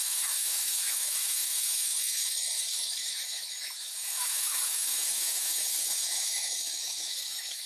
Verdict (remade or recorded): remade